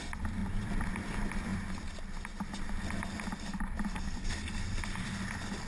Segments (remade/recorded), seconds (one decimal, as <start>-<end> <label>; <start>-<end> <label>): 0.0-5.7 recorded